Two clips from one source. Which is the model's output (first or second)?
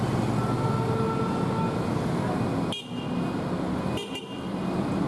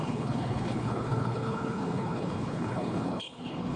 second